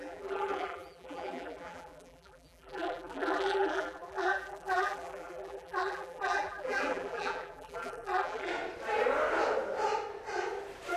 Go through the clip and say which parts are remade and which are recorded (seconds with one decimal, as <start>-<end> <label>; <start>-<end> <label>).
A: 0.0-8.5 remade; 8.5-11.0 recorded